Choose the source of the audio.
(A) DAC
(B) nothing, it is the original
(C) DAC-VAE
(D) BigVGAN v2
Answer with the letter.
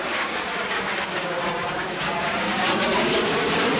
A